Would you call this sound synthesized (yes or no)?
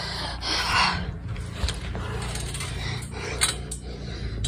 no